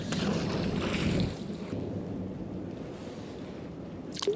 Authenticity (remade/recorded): recorded